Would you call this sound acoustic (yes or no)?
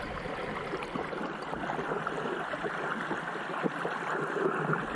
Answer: yes